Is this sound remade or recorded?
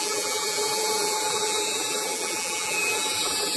remade